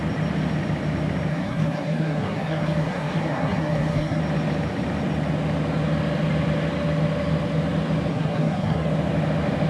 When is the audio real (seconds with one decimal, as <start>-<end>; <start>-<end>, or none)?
0.0-1.3; 4.2-8.1; 8.9-9.7